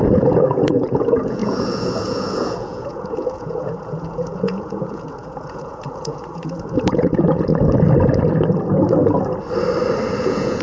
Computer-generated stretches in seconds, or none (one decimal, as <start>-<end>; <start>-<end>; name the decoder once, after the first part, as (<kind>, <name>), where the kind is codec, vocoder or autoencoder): 0.0-7.5 (vocoder, Vocos); 10.2-10.6

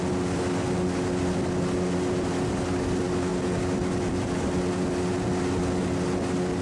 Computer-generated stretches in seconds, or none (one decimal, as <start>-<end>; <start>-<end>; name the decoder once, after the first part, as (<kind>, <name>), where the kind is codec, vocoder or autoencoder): none

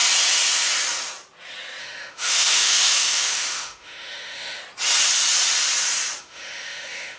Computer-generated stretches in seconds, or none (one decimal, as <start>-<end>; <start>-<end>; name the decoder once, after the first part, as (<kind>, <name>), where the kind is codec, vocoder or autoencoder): 1.8-4.6 (autoencoder, DAC-VAE); 6.2-7.2